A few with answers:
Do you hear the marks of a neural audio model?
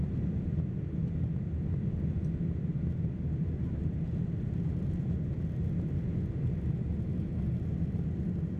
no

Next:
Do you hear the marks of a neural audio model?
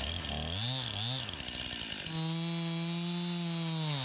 no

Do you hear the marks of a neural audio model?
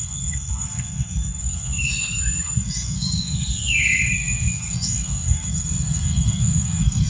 yes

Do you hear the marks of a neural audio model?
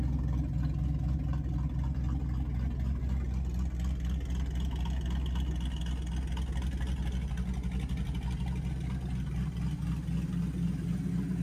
no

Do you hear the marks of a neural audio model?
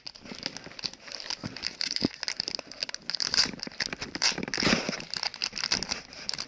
no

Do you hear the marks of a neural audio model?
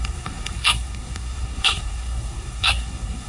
yes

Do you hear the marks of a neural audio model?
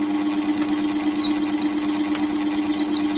no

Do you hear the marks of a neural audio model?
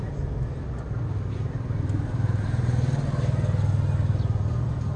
no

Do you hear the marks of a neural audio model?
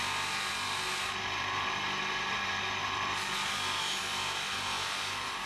no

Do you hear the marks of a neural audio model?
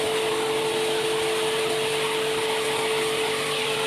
no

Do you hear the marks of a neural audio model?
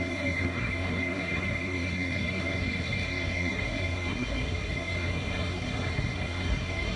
yes